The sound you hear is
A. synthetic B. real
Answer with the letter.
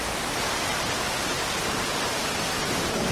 B